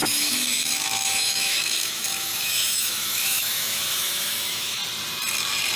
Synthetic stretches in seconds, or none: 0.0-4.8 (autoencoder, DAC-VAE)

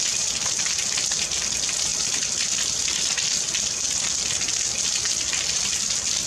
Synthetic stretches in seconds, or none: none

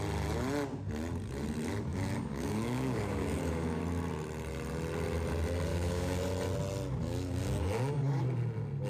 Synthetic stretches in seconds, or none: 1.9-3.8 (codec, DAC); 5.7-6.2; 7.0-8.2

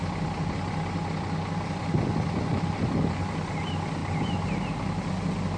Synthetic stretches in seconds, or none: none